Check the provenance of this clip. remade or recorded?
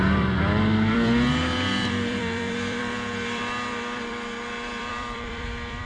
remade